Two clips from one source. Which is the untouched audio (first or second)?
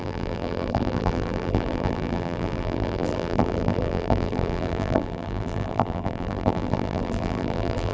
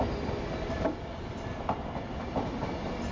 second